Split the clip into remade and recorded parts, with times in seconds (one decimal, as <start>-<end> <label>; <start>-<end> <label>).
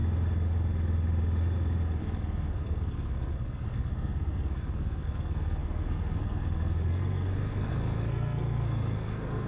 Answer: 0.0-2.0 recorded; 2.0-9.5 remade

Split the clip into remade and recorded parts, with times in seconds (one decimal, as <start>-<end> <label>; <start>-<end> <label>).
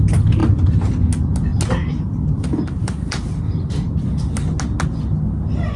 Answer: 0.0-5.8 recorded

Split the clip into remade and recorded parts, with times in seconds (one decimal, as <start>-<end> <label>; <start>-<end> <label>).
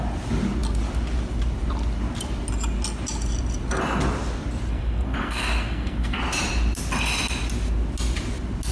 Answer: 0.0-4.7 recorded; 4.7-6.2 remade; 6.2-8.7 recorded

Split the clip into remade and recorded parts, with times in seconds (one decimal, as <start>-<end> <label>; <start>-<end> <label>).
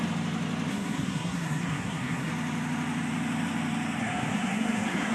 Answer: 0.0-0.7 recorded; 0.7-2.3 remade; 2.3-4.0 recorded; 4.0-5.1 remade